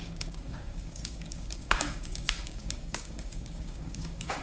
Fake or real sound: fake